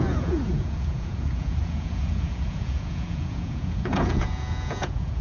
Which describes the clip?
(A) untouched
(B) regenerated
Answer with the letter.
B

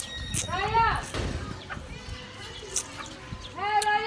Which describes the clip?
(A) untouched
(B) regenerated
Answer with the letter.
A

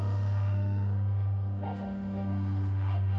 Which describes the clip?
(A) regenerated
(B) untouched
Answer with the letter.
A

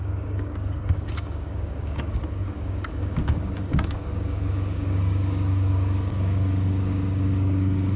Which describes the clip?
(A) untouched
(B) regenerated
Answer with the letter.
B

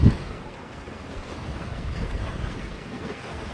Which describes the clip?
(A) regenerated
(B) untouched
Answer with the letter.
A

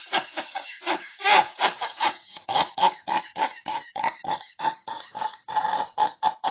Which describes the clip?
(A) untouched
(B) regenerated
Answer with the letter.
B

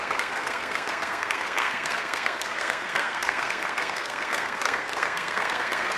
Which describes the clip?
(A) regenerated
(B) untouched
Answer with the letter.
A